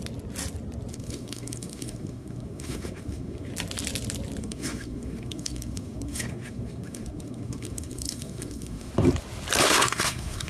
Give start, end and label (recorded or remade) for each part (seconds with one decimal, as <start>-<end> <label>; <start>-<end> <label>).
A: 0.0-0.9 recorded; 0.9-3.5 remade; 3.5-4.4 recorded; 4.4-8.9 remade; 8.9-9.6 recorded; 9.6-10.5 remade